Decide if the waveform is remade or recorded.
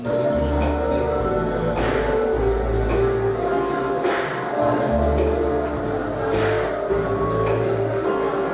recorded